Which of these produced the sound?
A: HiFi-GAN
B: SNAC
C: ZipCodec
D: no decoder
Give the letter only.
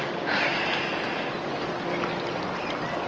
D